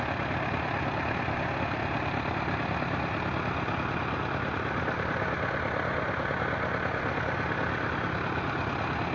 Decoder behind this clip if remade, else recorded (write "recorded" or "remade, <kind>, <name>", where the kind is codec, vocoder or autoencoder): recorded